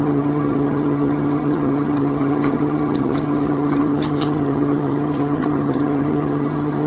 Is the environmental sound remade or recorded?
remade